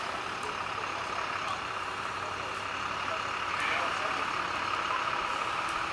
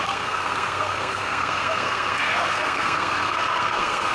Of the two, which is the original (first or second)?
first